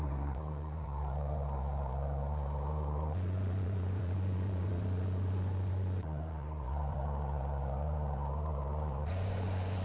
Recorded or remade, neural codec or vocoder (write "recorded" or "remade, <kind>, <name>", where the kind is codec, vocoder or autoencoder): remade, vocoder, Vocos